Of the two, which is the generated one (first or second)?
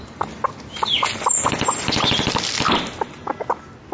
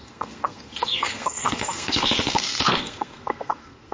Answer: second